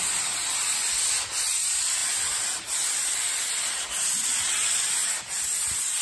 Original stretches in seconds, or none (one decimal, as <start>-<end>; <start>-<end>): 0.0-6.0